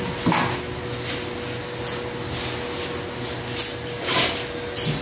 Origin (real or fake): real